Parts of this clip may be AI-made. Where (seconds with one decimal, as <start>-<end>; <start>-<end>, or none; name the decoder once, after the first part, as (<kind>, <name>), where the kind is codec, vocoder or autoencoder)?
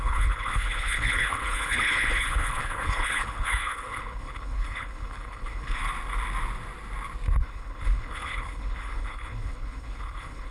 0.0-5.8 (codec, HILCodec); 7.4-10.5